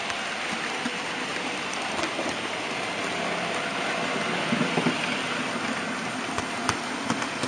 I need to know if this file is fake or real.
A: real